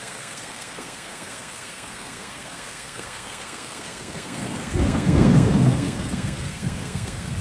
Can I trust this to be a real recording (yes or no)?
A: no